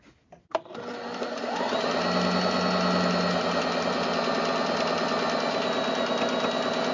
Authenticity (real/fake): real